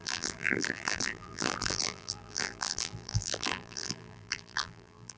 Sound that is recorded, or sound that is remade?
remade